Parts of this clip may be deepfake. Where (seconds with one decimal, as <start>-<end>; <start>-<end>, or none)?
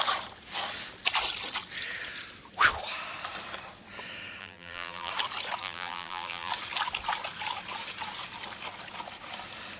4.4-5.1; 5.6-6.5